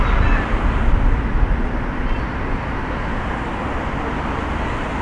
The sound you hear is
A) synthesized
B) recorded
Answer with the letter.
B